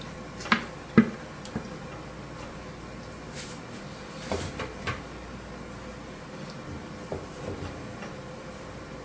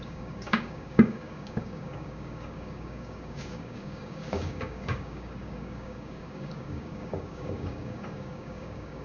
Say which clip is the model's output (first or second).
second